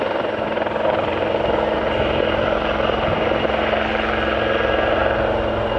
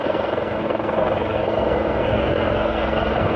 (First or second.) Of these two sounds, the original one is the first